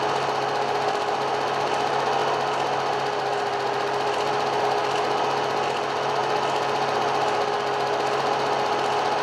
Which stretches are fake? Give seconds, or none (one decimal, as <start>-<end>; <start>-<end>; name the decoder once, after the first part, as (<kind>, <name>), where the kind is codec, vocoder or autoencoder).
none

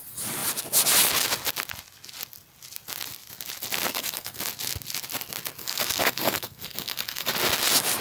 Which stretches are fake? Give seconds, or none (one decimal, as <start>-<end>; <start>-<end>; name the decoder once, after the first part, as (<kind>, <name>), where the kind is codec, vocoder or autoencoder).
3.9-4.4 (codec, SNAC); 5.6-7.3

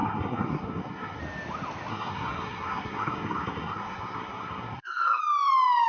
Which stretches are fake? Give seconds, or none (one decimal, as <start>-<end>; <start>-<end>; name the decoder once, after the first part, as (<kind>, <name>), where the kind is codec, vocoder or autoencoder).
0.0-1.2 (codec, SNAC); 1.9-5.2

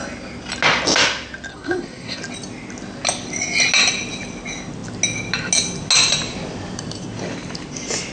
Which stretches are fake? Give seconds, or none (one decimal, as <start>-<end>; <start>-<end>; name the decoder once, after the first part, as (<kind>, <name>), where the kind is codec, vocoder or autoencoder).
1.5-2.2 (codec, SNAC)

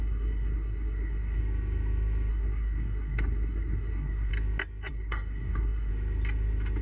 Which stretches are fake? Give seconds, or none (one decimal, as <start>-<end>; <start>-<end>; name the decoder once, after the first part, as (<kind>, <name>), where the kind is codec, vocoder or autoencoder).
0.0-1.4 (codec, SNAC); 2.3-4.3; 4.9-5.9